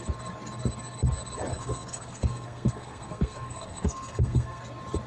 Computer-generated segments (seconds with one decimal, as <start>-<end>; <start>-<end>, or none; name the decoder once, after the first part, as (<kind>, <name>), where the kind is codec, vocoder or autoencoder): 1.5-4.6 (codec, SNAC)